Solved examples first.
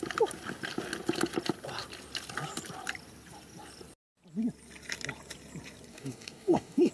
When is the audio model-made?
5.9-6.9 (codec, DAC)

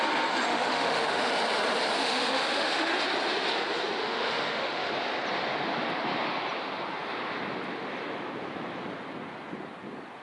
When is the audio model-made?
0.5-1.3 (autoencoder, DAC-VAE); 2.0-2.9; 4.0-4.9

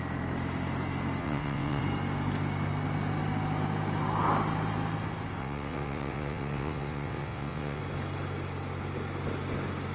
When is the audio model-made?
1.2-1.8 (vocoder, WaveNeXt); 5.4-7.8

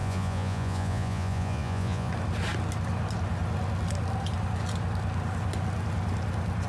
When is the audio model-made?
0.0-2.1 (vocoder, Vocos)

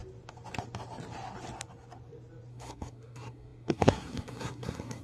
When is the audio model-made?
2.5-5.0 (codec, SNAC)